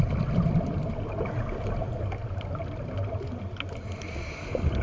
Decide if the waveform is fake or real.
real